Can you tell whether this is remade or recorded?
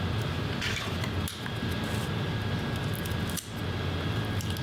recorded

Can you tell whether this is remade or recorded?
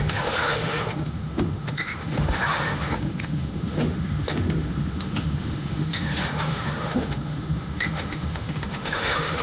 remade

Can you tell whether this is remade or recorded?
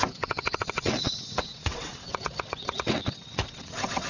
remade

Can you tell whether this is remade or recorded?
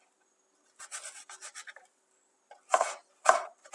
recorded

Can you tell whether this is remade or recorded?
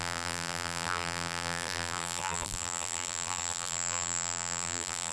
remade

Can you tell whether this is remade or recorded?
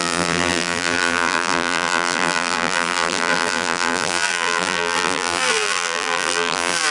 remade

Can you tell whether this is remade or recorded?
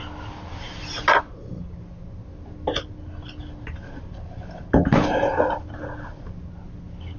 recorded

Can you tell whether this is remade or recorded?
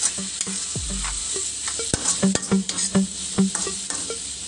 recorded